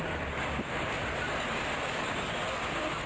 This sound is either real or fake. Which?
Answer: real